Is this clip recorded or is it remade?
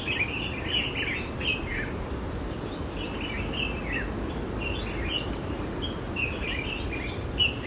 recorded